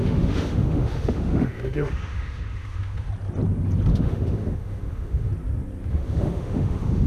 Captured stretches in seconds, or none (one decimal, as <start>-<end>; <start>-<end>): 3.1-3.9; 5.3-5.9